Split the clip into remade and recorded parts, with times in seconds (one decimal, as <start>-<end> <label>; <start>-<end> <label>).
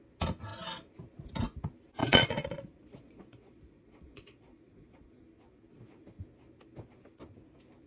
0.0-2.0 recorded; 2.0-5.1 remade; 5.1-7.9 recorded